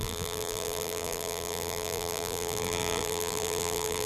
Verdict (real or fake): fake